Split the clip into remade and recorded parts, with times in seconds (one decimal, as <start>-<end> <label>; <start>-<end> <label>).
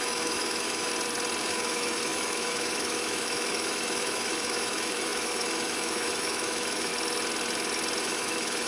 0.0-0.9 remade; 0.9-1.4 recorded; 1.4-6.9 remade; 6.9-8.0 recorded; 8.0-8.7 remade